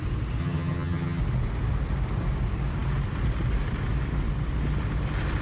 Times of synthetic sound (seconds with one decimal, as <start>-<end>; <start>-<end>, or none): 0.4-1.2